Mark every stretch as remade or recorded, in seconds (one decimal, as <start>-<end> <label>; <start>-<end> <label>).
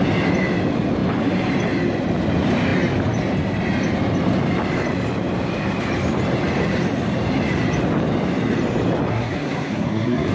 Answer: 0.0-9.1 recorded; 9.1-10.3 remade